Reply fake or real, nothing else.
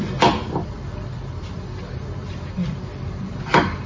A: fake